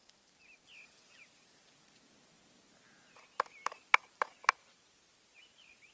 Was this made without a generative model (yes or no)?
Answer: yes